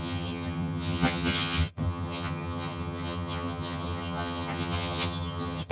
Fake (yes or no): yes